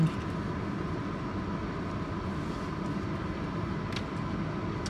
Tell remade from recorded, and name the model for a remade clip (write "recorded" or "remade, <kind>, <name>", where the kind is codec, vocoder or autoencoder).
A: recorded